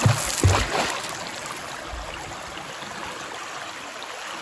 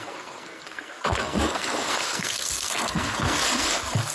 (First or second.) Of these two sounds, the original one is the first